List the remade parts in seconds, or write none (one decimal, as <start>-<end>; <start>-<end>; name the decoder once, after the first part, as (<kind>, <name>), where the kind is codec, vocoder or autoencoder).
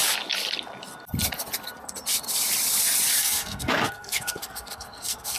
3.2-5.4 (codec, SNAC)